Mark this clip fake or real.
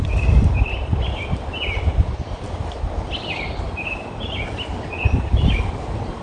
real